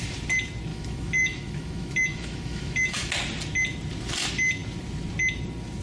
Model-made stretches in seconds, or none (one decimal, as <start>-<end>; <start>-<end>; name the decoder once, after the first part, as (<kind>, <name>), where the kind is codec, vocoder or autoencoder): 0.7-3.1 (autoencoder, DAC-VAE)